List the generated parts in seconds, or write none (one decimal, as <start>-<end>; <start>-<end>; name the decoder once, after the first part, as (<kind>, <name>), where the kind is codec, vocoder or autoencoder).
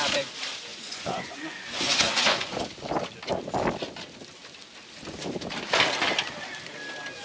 0.7-2.6 (vocoder, Vocos)